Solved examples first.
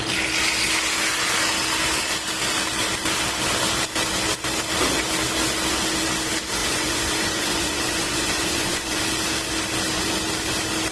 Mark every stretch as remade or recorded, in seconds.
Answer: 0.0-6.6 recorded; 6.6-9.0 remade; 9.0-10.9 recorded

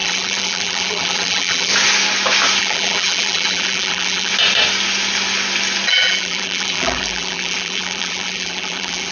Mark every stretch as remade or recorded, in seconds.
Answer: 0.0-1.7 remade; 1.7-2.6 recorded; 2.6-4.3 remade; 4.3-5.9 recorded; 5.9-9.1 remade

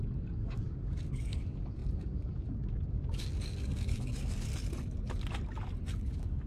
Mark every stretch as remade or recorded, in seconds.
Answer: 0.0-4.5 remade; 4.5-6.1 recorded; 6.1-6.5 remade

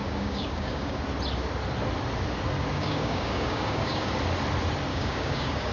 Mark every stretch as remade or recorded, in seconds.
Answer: 0.0-1.0 remade; 1.0-2.7 recorded; 2.7-4.1 remade; 4.1-4.9 recorded; 4.9-5.7 remade

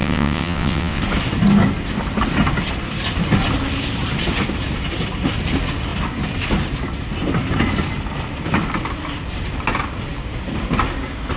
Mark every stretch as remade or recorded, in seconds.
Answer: 0.0-1.0 remade; 1.0-11.4 recorded

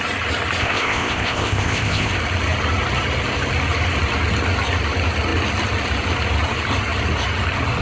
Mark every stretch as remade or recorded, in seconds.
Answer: 0.0-0.6 recorded; 0.6-2.1 remade; 2.1-7.8 recorded

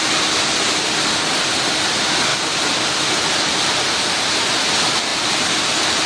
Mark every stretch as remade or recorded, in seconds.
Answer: 0.0-6.1 recorded